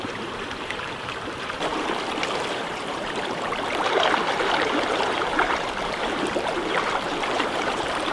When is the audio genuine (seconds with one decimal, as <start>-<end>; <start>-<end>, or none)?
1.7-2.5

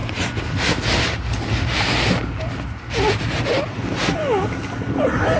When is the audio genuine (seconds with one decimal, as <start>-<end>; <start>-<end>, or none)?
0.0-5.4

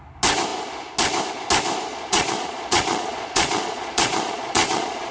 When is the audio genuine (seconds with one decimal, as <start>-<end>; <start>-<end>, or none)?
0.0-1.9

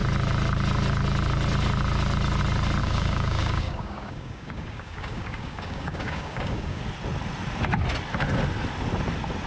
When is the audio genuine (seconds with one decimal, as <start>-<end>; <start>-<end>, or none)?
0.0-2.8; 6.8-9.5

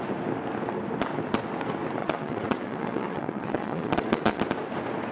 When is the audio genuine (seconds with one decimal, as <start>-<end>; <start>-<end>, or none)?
0.0-2.0; 4.4-5.1

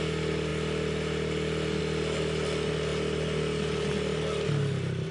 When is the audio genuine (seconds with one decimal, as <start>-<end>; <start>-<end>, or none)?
0.0-5.1